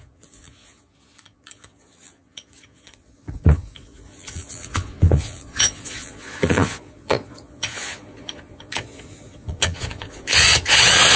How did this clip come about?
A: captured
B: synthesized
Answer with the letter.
B